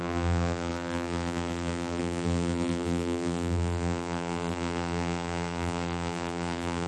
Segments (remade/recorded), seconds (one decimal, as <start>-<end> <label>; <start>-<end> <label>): 0.0-6.9 remade